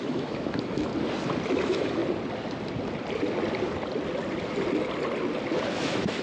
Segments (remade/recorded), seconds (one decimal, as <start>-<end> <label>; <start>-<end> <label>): 0.0-0.9 remade; 0.9-1.5 recorded; 1.5-2.0 remade; 2.0-5.7 recorded; 5.7-6.2 remade